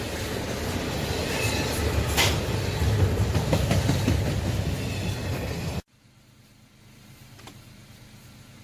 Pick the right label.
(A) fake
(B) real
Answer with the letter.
B